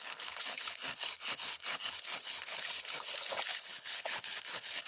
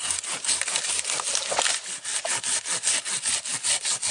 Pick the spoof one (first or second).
first